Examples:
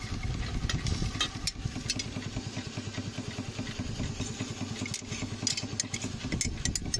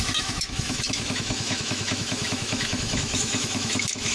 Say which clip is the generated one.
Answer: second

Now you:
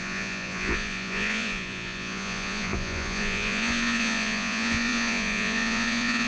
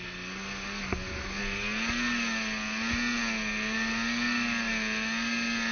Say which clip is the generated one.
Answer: first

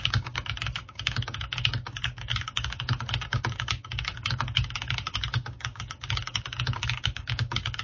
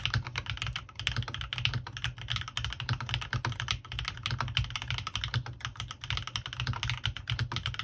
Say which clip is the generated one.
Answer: first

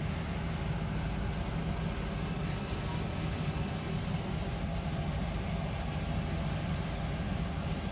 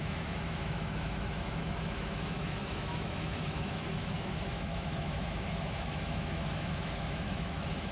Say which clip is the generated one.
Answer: second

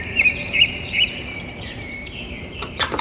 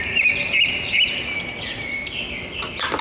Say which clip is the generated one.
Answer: first